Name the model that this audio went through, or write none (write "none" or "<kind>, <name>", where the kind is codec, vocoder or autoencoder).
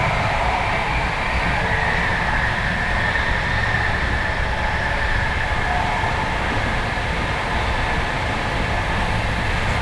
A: vocoder, BigVGAN v2